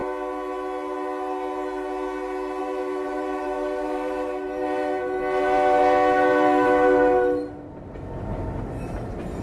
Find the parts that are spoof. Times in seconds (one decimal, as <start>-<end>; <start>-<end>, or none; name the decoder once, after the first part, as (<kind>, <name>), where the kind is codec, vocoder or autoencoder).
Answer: 2.6-9.4 (vocoder, BigVGAN v2)